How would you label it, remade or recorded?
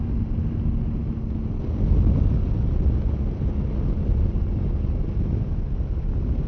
recorded